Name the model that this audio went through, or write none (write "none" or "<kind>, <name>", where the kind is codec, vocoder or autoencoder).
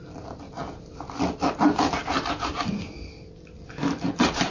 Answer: none